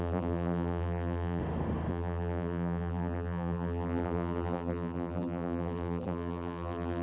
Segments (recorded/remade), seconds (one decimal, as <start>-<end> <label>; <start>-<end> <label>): 0.0-1.4 remade; 1.4-1.9 recorded; 1.9-7.0 remade